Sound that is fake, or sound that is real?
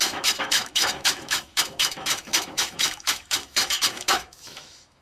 fake